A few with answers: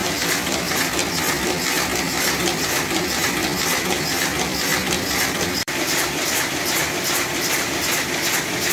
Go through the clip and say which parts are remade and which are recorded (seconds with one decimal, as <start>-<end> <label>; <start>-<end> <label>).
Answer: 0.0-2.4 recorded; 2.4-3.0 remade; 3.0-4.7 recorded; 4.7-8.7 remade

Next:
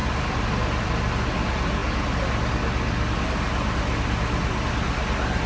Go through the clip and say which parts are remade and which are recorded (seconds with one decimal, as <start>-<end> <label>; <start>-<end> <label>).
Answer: 0.0-0.9 remade; 0.9-5.5 recorded

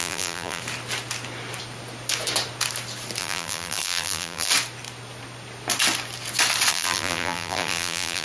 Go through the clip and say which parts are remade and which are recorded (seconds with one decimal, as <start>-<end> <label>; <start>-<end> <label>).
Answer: 0.0-0.6 remade; 0.6-3.2 recorded; 3.2-4.5 remade; 4.5-6.7 recorded; 6.7-8.2 remade

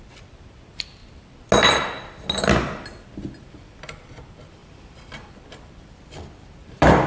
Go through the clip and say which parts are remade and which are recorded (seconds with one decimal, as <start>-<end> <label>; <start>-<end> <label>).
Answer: 0.0-1.0 remade; 1.0-3.5 recorded; 3.5-7.1 remade

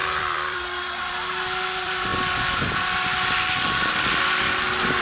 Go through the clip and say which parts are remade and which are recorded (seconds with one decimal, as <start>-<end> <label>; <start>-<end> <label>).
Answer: 0.0-2.1 remade; 2.1-5.0 recorded